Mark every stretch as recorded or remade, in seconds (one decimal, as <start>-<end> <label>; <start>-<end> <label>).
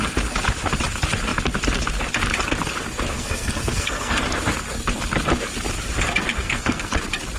0.0-3.1 recorded; 3.1-4.2 remade; 4.2-6.3 recorded; 6.3-6.9 remade; 6.9-7.4 recorded